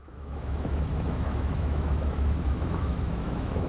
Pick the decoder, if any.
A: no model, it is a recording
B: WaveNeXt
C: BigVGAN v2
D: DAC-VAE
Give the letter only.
D